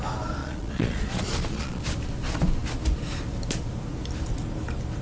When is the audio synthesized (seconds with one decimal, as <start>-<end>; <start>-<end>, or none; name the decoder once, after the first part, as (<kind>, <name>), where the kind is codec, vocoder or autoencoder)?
0.4-1.8 (vocoder, Vocos)

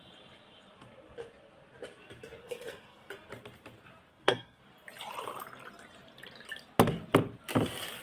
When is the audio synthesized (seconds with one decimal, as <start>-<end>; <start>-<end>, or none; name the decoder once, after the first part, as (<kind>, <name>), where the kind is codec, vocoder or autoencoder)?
2.4-3.1 (codec, SNAC); 4.1-4.6